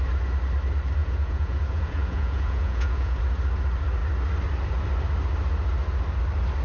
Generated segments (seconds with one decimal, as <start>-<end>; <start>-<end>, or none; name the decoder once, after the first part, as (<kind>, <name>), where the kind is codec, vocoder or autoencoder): 1.0-3.2 (vocoder, Vocos)